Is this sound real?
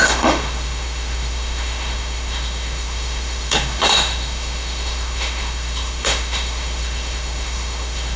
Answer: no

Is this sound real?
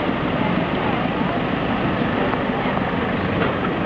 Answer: yes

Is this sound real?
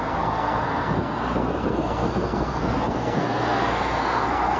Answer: no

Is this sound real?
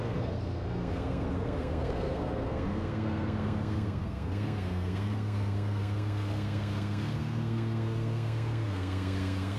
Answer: no